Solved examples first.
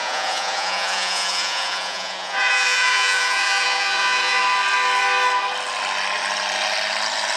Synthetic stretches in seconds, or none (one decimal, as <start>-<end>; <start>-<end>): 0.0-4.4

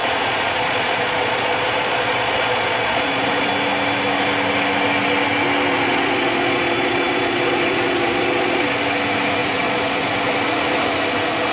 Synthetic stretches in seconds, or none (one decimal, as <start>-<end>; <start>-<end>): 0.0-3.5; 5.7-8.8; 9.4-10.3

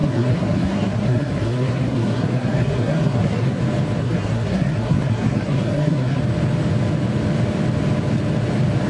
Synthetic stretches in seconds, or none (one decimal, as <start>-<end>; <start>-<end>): 0.0-3.6; 4.0-6.2